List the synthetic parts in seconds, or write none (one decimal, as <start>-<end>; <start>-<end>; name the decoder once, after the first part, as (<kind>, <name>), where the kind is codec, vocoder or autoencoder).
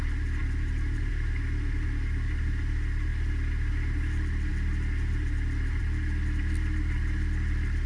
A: none